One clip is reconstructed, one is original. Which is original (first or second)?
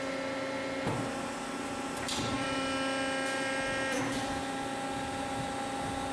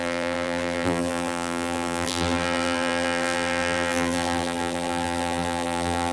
first